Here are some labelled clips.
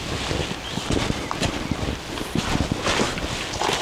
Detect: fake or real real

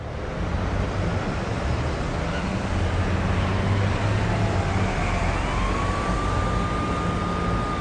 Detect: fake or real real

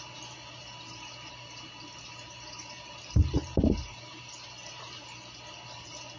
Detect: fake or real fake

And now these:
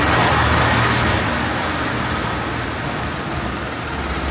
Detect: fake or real real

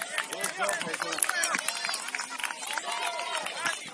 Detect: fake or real real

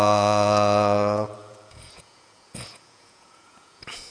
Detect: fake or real fake